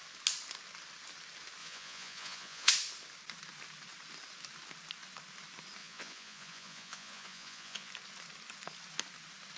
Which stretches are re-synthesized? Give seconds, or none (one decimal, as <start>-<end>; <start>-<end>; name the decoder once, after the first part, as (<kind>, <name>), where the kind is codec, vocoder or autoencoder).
1.6-2.7 (vocoder, Vocos); 5.8-7.9